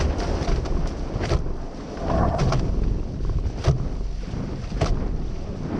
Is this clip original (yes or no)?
yes